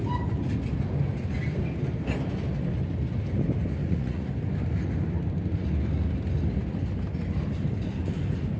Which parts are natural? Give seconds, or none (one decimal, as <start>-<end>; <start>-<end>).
0.0-3.8; 4.3-8.6